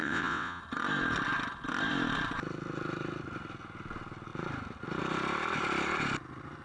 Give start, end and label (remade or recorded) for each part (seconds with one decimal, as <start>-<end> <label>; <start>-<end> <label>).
0.0-0.6 remade; 0.6-6.6 recorded